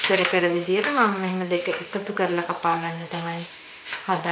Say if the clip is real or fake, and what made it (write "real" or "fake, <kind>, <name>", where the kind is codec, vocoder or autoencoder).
fake, autoencoder, DAC-VAE